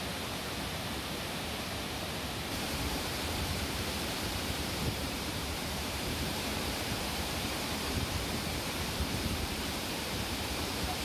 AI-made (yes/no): yes